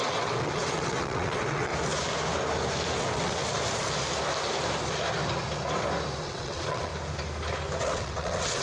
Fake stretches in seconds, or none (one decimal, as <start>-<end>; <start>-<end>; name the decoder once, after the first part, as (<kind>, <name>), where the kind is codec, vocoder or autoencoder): 0.0-1.7 (vocoder, WaveNeXt); 3.0-3.4; 6.2-6.9; 7.8-8.6